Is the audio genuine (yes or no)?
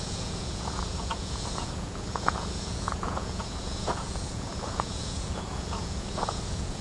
no